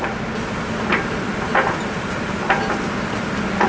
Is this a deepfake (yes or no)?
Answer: no